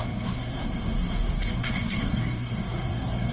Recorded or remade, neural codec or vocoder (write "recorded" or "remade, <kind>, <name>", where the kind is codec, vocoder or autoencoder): remade, codec, SNAC